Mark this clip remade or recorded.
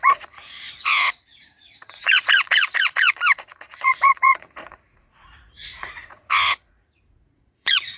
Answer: remade